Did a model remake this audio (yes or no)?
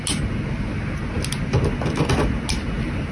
no